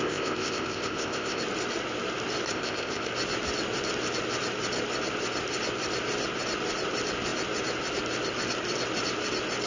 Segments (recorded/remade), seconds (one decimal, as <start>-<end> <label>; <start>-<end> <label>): 0.0-1.4 remade; 1.4-2.5 recorded; 2.5-3.1 remade; 3.1-9.7 recorded